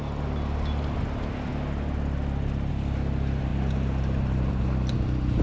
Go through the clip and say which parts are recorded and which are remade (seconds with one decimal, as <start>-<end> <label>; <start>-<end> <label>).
0.0-5.4 recorded